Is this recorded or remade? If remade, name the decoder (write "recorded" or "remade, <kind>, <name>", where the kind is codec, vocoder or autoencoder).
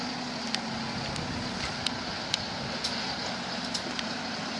recorded